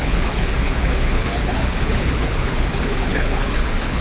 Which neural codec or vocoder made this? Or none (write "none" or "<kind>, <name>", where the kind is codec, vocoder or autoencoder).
codec, HILCodec